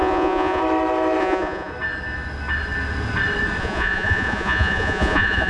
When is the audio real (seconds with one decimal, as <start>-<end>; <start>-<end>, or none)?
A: 0.6-1.2; 1.7-3.6